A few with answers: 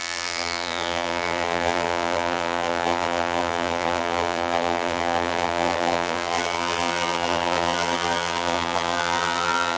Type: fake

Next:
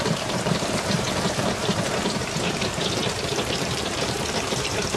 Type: fake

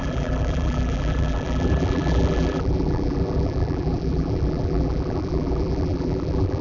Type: fake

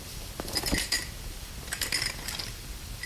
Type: fake